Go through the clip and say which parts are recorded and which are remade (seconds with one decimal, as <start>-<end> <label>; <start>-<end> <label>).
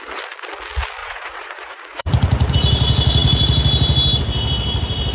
0.0-1.0 recorded; 1.0-2.5 remade; 2.5-5.1 recorded